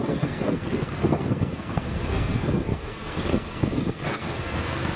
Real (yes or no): no